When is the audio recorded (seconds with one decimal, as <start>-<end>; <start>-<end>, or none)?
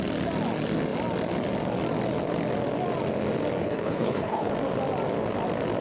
0.0-3.6; 4.5-5.8